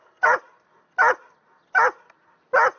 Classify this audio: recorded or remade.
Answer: recorded